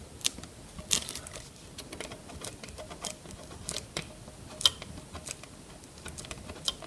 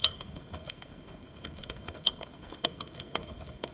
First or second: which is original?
first